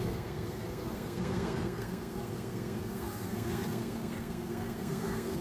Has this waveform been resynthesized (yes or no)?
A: yes